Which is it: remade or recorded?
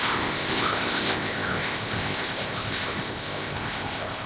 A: remade